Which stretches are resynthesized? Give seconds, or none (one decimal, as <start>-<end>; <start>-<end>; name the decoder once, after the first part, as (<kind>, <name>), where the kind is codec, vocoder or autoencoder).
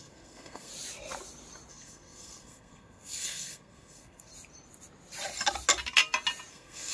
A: 0.0-0.7 (codec, SNAC); 1.7-4.3; 6.5-6.9